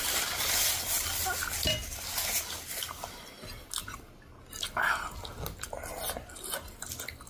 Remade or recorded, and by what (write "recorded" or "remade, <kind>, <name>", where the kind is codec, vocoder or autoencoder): recorded